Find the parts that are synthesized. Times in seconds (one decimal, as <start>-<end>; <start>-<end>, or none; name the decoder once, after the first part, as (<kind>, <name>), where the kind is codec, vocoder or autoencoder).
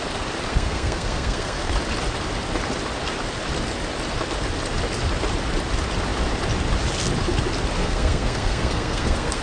0.5-1.7 (codec, SNAC); 7.8-9.4